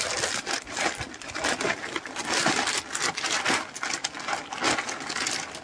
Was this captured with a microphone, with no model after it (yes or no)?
yes